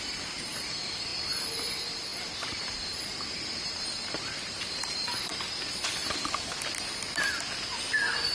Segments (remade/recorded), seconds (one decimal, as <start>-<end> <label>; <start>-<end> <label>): 0.0-1.1 remade; 1.1-1.6 recorded; 1.6-6.0 remade; 6.0-8.3 recorded